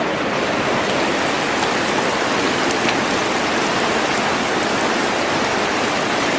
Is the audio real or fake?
real